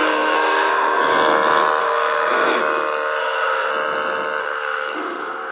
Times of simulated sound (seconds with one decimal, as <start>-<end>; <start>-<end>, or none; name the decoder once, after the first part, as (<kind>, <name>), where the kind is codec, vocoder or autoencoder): 0.0-1.0 (codec, SNAC); 1.8-2.6; 3.2-3.7; 4.4-5.5